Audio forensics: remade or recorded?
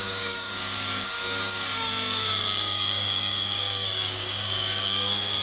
remade